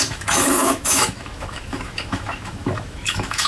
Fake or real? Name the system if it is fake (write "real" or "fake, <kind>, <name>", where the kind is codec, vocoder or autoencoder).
fake, autoencoder, DAC-VAE